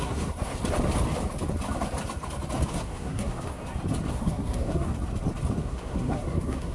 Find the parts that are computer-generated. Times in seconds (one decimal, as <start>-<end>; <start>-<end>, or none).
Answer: 0.0-0.5; 2.7-3.6; 4.1-4.9; 5.6-6.7